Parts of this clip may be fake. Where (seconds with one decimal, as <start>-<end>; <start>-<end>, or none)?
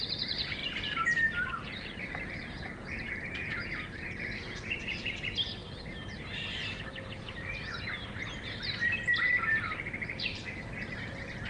0.0-0.6; 1.4-5.6; 9.5-11.5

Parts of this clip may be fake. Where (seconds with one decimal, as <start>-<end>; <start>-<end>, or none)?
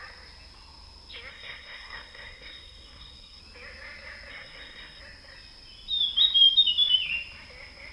1.3-3.4; 4.3-5.0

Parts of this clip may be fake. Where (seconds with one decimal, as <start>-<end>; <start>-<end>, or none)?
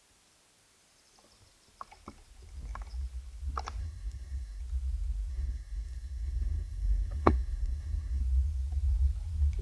3.8-4.6; 5.3-8.2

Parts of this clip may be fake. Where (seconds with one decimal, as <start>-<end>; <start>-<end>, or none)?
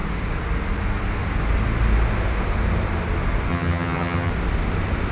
3.5-4.3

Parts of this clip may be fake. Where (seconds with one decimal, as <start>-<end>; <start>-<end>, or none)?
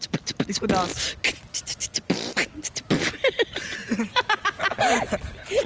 1.3-4.7